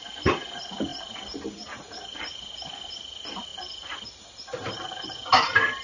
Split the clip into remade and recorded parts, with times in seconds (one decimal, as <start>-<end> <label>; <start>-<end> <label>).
0.0-5.8 remade